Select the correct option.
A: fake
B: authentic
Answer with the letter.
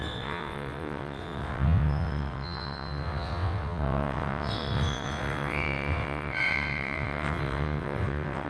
A